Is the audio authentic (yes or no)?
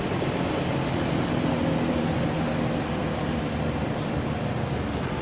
yes